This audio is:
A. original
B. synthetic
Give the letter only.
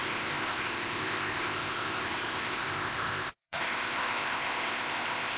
B